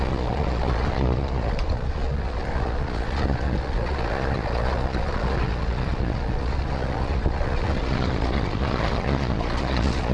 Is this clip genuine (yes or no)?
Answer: no